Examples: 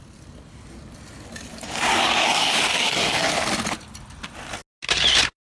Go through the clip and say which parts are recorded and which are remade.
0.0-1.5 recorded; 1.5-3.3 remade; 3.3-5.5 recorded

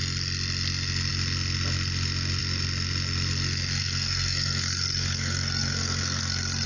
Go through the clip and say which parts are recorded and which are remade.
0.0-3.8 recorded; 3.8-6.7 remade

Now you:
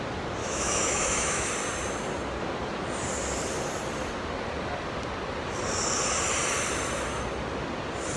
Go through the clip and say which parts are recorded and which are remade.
0.0-0.4 recorded; 0.4-1.5 remade; 1.5-8.2 recorded

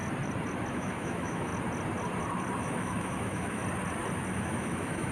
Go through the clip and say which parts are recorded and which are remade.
0.0-0.7 recorded; 0.7-1.5 remade; 1.5-2.6 recorded; 2.6-3.6 remade; 3.6-4.3 recorded; 4.3-5.1 remade

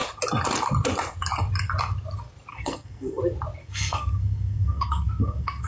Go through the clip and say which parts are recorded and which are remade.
0.0-2.5 recorded; 2.5-3.2 remade; 3.2-3.6 recorded; 3.6-5.7 remade

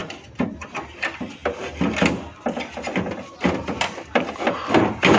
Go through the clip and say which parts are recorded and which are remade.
0.0-5.2 recorded

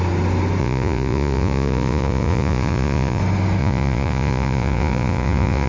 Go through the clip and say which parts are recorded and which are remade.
0.0-0.6 recorded; 0.6-3.2 remade; 3.2-3.6 recorded; 3.6-5.7 remade